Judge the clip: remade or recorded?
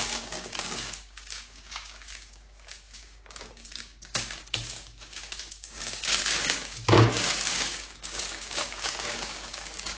remade